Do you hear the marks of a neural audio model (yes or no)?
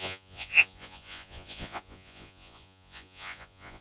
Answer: yes